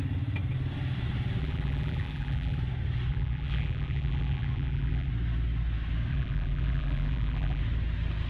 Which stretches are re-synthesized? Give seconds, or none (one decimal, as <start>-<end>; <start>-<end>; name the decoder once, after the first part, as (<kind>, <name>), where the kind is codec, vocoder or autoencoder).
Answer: 1.4-2.6 (vocoder, BigVGAN v2); 3.1-5.1; 6.1-7.6